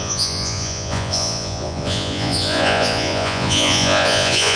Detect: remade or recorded remade